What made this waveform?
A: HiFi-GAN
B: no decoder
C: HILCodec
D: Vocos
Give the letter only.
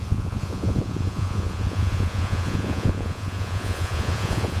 D